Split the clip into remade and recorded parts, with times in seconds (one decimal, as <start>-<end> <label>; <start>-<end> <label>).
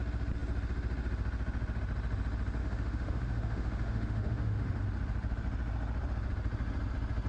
0.0-2.6 recorded; 2.6-4.8 remade; 4.8-7.3 recorded